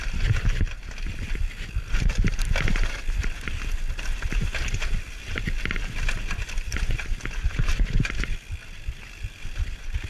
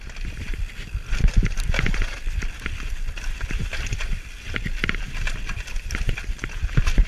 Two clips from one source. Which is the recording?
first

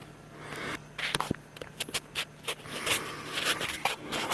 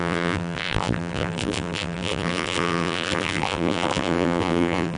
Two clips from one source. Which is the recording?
first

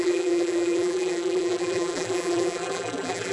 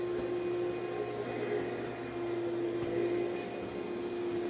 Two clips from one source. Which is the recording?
second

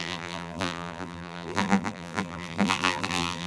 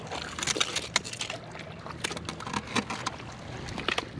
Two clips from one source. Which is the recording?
second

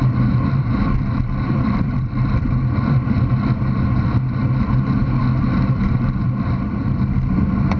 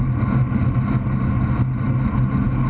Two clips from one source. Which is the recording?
second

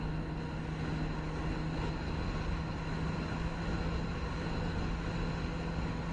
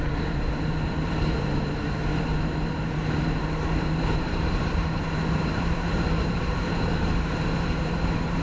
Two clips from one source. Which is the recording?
first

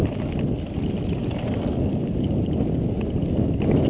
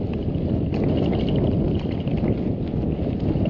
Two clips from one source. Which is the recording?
first